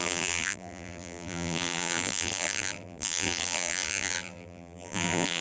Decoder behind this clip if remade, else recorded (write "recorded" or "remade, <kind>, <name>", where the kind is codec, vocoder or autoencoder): remade, vocoder, BigVGAN v2